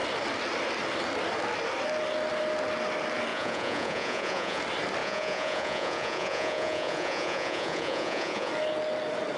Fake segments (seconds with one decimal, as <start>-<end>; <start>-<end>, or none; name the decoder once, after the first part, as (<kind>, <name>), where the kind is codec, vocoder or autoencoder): 3.3-4.6 (vocoder, Vocos); 5.0-8.5